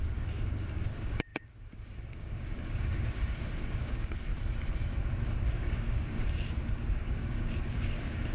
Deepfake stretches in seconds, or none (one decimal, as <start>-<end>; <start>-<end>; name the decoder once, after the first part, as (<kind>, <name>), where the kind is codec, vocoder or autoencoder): 0.0-4.3 (codec, DAC); 5.4-8.3